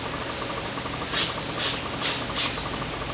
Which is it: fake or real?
real